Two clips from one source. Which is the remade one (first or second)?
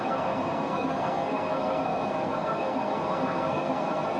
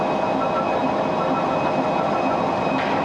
first